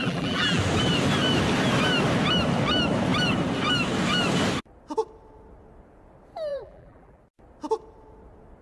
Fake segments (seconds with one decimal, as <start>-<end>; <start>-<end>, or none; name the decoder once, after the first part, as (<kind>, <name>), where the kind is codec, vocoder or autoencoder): 0.0-0.6 (vocoder, BigVGAN v2); 6.5-7.2